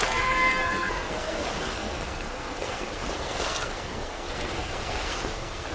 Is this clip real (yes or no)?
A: no